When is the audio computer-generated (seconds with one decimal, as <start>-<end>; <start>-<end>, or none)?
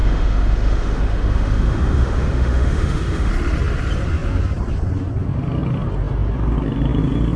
0.0-3.3